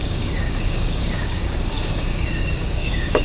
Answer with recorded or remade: remade